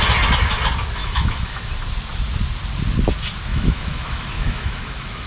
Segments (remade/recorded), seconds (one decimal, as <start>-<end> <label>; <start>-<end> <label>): 0.0-1.0 recorded; 1.0-1.6 remade; 1.6-3.5 recorded; 3.5-5.3 remade